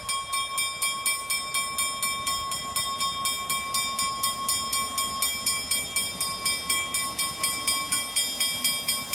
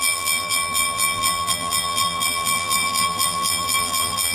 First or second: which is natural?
first